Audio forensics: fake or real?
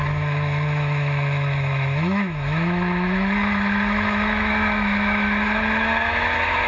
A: fake